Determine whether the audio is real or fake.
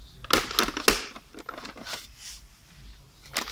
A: real